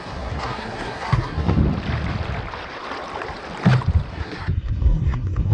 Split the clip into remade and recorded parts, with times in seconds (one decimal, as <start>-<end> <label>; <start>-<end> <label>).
0.0-1.6 remade; 1.6-4.1 recorded; 4.1-5.5 remade